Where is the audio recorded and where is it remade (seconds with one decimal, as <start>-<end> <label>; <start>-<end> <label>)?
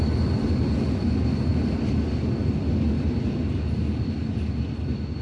0.0-5.2 recorded